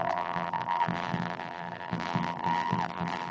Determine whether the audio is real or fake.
fake